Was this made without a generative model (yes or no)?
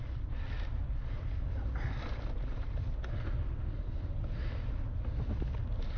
yes